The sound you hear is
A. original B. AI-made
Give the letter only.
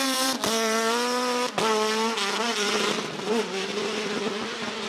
B